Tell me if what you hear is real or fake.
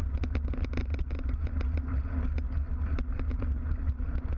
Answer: real